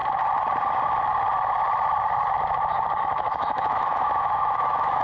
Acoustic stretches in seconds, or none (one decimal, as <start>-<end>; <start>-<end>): 0.0-3.0